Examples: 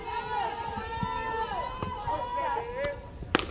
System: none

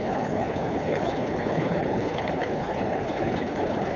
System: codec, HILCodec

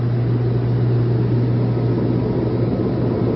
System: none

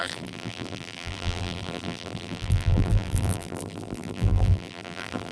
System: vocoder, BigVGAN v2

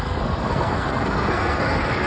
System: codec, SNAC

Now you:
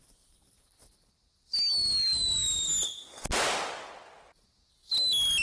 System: none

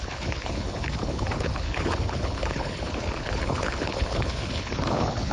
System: codec, HILCodec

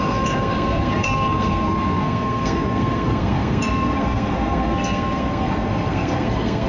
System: codec, SNAC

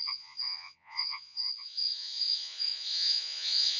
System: vocoder, Vocos